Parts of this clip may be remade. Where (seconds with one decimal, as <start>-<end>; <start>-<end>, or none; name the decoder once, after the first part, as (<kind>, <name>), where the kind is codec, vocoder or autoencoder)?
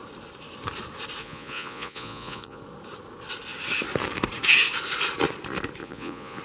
1.2-2.6 (vocoder, Vocos); 5.8-6.4